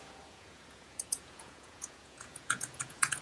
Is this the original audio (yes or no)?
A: no